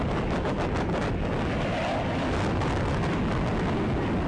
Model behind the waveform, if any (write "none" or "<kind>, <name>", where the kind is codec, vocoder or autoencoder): none